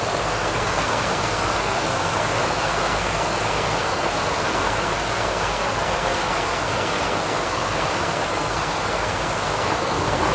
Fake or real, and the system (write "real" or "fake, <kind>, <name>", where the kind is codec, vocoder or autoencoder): fake, codec, SNAC